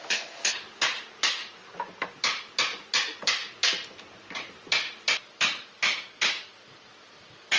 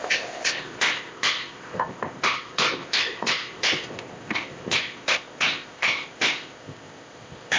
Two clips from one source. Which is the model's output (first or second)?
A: second